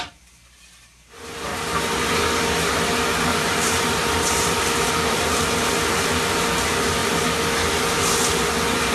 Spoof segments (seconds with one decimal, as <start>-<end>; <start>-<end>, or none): 3.3-5.7